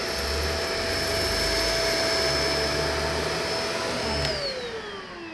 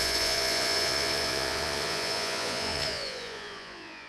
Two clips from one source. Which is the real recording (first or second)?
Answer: first